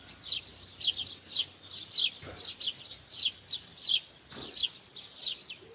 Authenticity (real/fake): real